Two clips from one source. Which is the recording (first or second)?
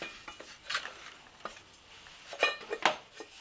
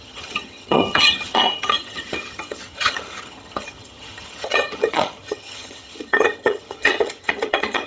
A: first